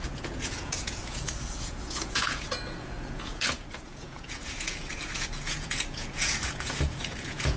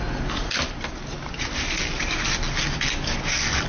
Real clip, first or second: second